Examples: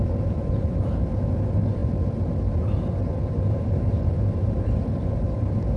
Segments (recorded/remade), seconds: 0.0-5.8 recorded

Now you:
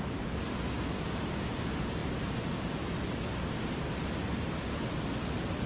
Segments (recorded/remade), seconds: 0.0-5.7 recorded

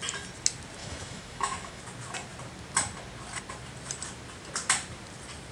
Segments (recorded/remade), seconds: 0.0-0.8 recorded; 0.8-1.8 remade; 1.8-5.5 recorded

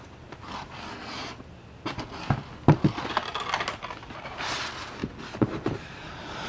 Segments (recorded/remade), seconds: 0.0-5.0 recorded; 5.0-6.5 remade

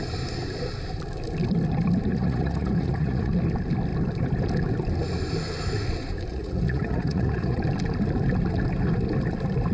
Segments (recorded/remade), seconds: 0.0-2.1 recorded; 2.1-3.3 remade; 3.3-6.3 recorded; 6.3-7.6 remade; 7.6-9.7 recorded

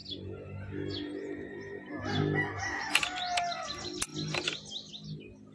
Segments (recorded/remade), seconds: 0.0-5.5 recorded

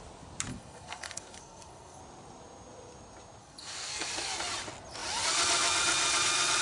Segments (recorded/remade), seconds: 0.0-0.5 recorded; 0.5-2.0 remade; 2.0-3.4 recorded; 3.4-4.1 remade; 4.1-6.6 recorded